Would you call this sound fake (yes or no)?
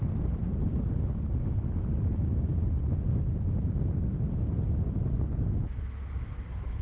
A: no